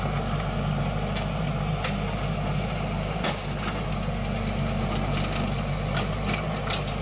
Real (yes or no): yes